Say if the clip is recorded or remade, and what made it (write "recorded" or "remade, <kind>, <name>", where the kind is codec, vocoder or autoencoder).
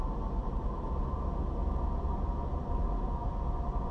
recorded